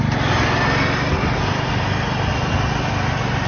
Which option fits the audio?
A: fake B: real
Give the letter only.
B